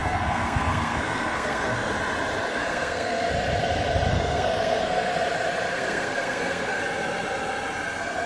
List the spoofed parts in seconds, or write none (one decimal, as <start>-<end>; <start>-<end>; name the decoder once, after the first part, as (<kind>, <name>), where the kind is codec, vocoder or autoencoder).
0.0-1.9 (codec, SNAC); 2.5-3.3; 4.1-5.1; 5.7-6.8